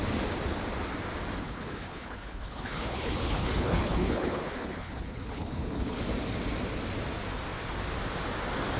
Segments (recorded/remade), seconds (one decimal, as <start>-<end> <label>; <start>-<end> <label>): 0.0-1.4 recorded; 1.4-6.0 remade; 6.0-8.8 recorded